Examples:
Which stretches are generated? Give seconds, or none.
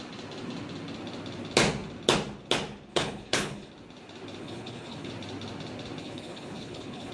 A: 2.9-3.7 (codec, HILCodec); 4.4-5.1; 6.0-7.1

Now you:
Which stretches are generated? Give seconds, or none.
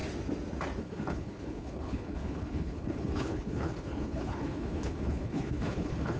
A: 0.8-6.2 (codec, HILCodec)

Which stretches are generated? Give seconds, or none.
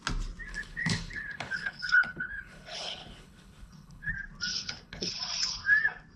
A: 0.5-4.1 (codec, HILCodec); 4.5-5.1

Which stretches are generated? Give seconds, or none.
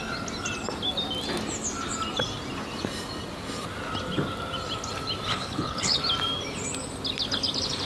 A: 5.3-6.0 (codec, HILCodec)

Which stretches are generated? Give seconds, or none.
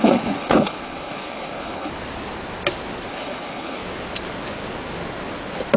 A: 0.0-1.9 (codec, HILCodec); 3.1-3.8